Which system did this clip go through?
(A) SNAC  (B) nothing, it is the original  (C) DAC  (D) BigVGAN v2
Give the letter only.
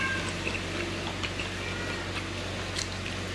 B